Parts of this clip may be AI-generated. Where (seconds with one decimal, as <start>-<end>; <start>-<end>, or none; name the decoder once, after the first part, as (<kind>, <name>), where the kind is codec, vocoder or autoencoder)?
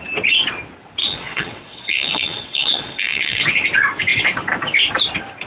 1.0-3.4 (vocoder, WaveNeXt)